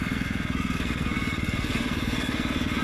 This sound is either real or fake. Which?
fake